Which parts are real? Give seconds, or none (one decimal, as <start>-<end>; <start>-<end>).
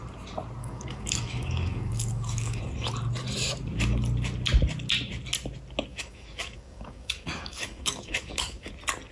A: 0.0-0.6; 2.6-5.9; 8.7-9.1